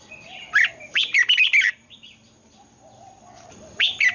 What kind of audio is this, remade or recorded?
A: remade